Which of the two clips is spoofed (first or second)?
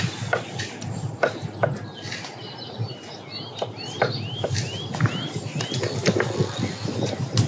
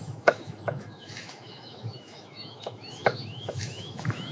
second